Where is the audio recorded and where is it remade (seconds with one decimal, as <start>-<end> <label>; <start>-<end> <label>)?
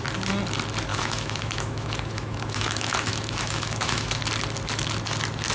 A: 0.0-0.9 recorded; 0.9-4.2 remade; 4.2-5.5 recorded